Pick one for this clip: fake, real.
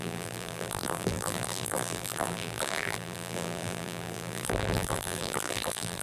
fake